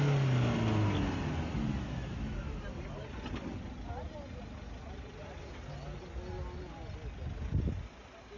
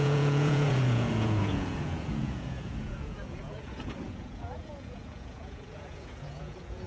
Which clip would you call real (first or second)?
first